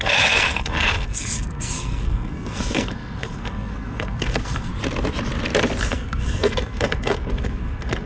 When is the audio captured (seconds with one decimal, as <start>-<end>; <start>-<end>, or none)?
4.7-5.8